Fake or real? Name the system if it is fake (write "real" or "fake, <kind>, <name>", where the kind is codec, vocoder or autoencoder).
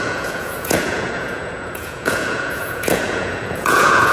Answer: fake, vocoder, Vocos